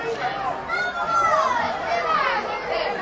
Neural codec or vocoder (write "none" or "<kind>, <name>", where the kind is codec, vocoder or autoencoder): none